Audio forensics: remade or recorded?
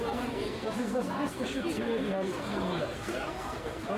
remade